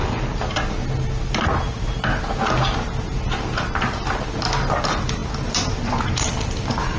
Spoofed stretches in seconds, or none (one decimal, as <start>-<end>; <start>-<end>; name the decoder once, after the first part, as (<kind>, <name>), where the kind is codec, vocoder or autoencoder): none